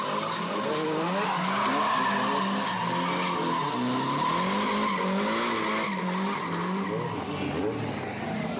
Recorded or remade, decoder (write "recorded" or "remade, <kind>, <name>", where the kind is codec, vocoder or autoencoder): recorded